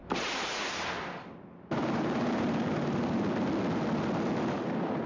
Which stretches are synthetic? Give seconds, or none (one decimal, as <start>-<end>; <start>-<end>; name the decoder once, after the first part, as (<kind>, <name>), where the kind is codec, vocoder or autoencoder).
0.0-3.1 (vocoder, BigVGAN v2)